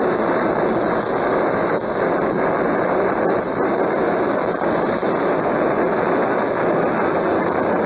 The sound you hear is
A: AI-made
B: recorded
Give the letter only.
B